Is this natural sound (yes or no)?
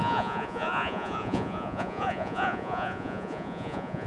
no